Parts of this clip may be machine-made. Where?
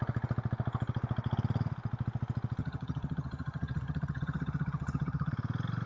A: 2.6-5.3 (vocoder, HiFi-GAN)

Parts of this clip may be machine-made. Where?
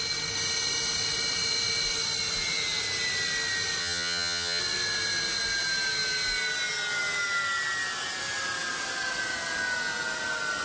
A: 3.8-4.6 (vocoder, HiFi-GAN)